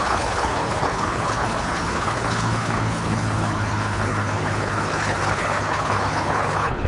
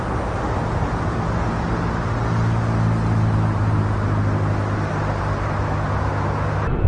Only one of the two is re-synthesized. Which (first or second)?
first